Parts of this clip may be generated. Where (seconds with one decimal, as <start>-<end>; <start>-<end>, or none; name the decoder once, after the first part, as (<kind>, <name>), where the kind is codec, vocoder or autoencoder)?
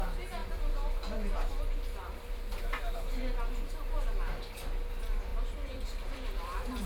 0.4-2.8 (vocoder, BigVGAN v2); 5.3-6.9